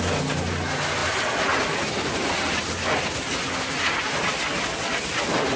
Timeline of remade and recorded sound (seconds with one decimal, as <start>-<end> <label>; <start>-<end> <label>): 0.0-5.6 recorded